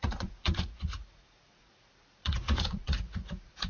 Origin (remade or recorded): remade